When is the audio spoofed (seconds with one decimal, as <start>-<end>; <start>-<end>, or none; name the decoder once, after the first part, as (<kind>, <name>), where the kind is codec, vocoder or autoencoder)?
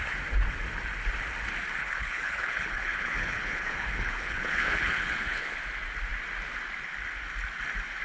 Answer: 1.8-5.6 (codec, HILCodec)